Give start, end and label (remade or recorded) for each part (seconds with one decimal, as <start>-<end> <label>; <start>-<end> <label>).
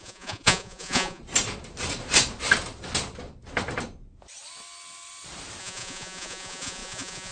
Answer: 0.0-1.2 remade; 1.2-5.6 recorded; 5.6-7.3 remade